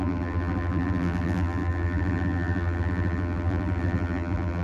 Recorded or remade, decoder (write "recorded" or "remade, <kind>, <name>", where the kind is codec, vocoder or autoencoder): remade, vocoder, BigVGAN v2